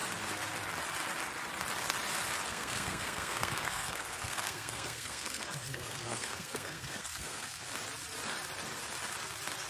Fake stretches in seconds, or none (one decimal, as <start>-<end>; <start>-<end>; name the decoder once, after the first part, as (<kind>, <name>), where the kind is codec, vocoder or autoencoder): 2.5-7.7 (codec, SNAC)